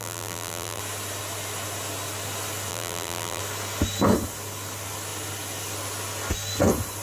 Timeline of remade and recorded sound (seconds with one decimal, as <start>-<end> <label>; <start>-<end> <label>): 0.0-0.8 remade; 0.8-2.7 recorded; 2.7-3.4 remade; 3.4-7.0 recorded